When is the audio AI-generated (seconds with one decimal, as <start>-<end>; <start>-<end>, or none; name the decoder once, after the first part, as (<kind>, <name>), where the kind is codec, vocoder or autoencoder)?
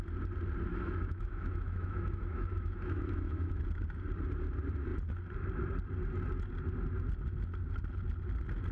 0.7-3.6 (autoencoder, DAC-VAE)